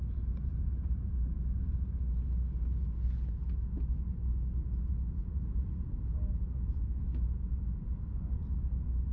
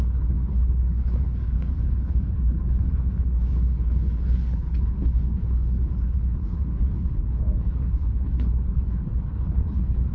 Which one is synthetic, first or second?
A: second